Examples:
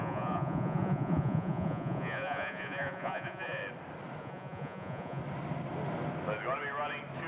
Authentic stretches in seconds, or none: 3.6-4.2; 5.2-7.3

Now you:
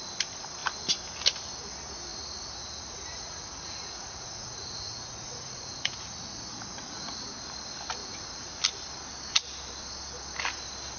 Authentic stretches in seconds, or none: 0.0-2.1; 7.2-8.0; 8.6-11.0

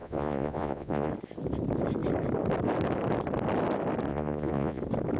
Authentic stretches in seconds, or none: 1.1-4.1; 4.8-5.2

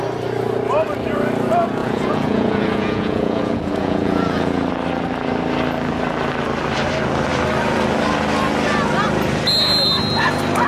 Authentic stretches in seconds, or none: 0.0-1.8; 4.7-10.7